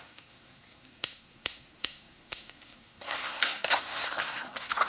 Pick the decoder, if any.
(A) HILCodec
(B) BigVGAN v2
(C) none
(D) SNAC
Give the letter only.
D